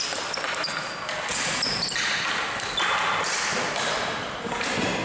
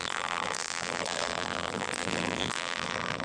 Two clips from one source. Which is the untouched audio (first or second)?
first